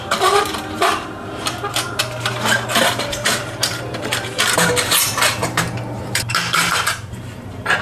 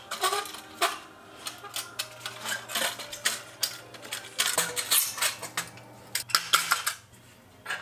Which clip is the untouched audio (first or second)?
second